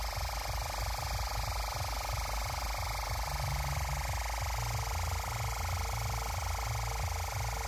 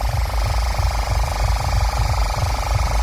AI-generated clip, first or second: second